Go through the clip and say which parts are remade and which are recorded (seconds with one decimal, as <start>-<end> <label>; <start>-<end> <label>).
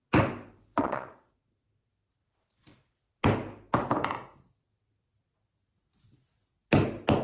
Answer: 0.0-0.8 recorded; 0.8-1.3 remade; 1.3-7.2 recorded